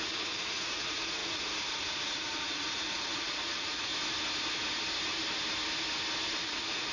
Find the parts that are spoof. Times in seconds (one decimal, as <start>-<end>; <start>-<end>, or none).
0.0-3.9; 6.4-6.9